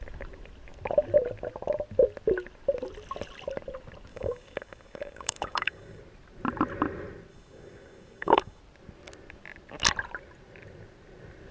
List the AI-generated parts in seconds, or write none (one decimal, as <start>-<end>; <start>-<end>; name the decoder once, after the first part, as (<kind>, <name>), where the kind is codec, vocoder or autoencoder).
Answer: 4.1-6.0 (codec, DAC); 7.3-8.6